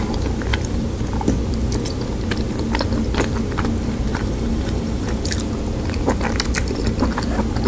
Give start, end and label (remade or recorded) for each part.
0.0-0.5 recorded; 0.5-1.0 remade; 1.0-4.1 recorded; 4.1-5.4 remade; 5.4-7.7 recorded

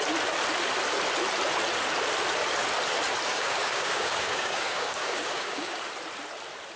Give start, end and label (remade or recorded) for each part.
0.0-3.3 recorded; 3.3-5.8 remade; 5.8-6.8 recorded

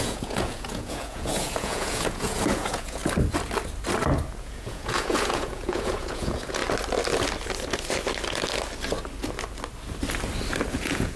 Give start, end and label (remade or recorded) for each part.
0.0-3.0 remade; 3.0-4.4 recorded; 4.4-6.6 remade; 6.6-10.7 recorded; 10.7-11.2 remade